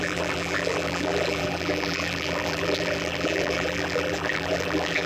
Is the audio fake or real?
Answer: fake